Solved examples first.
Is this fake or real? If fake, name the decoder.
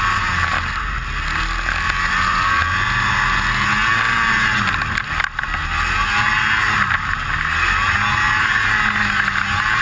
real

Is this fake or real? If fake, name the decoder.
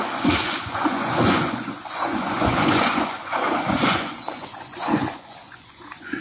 fake, vocoder, Vocos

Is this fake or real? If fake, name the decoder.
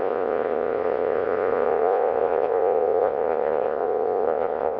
fake, vocoder, Vocos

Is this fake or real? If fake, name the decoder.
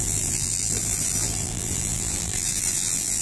fake, vocoder, BigVGAN v2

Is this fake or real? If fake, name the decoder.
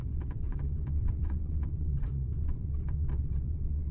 fake, vocoder, WaveNeXt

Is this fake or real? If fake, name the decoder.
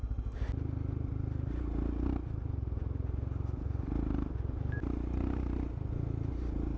real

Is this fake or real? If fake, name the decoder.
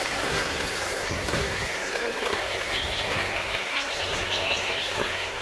fake, codec, SNAC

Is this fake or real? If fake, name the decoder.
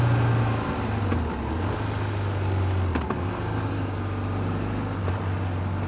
real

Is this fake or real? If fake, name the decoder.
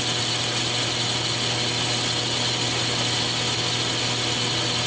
real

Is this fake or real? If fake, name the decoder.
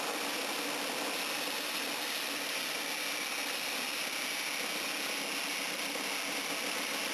real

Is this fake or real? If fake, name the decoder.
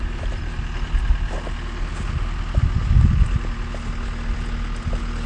real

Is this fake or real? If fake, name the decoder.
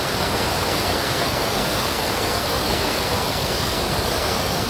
fake, codec, SNAC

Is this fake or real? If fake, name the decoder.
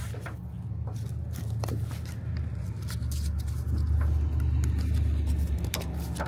real